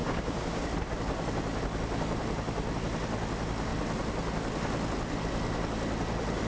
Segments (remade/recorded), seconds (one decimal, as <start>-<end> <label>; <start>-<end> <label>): 0.0-0.7 remade; 0.7-6.5 recorded